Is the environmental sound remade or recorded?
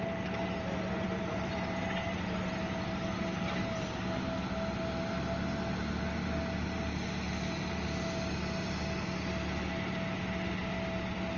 recorded